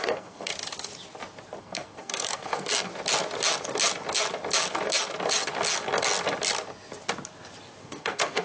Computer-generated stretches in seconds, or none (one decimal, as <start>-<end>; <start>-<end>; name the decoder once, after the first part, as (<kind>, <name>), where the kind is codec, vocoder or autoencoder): 0.0-0.5 (codec, SNAC); 1.6-2.9; 7.8-8.4